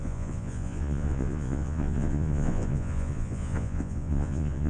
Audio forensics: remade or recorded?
remade